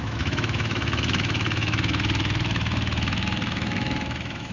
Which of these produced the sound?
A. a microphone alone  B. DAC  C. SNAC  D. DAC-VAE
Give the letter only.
D